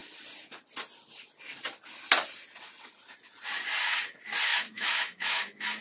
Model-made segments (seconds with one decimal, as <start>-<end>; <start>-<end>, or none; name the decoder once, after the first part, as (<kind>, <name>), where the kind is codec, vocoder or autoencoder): 4.5-5.8 (autoencoder, DAC-VAE)